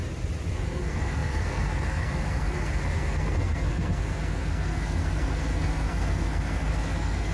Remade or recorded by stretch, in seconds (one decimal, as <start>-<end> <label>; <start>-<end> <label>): 0.0-0.5 recorded; 0.5-7.3 remade